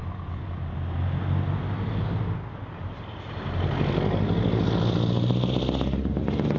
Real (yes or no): yes